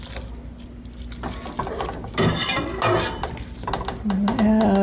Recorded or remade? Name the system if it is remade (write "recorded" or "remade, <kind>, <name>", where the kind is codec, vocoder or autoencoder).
recorded